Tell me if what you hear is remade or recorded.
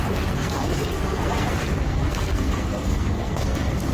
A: remade